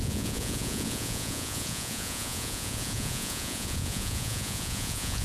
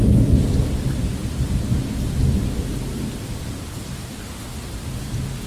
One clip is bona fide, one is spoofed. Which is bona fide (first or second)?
second